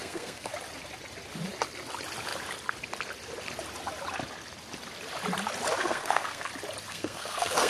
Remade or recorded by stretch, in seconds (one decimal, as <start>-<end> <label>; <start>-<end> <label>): 0.0-0.5 remade; 0.5-5.8 recorded; 5.8-6.5 remade; 6.5-6.9 recorded; 6.9-7.7 remade